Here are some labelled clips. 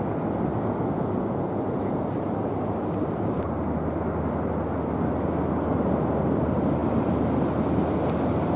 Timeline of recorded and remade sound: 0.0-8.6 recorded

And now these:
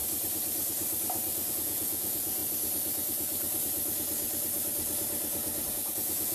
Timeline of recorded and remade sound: 0.0-1.5 recorded; 1.5-2.4 remade; 2.4-5.7 recorded; 5.7-6.3 remade